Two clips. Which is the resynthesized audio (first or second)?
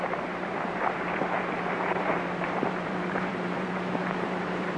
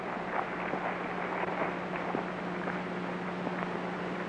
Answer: first